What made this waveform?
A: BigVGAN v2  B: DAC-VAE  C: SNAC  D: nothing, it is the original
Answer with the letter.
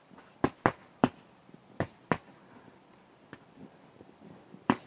A